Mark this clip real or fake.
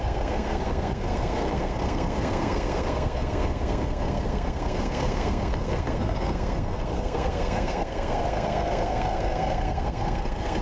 fake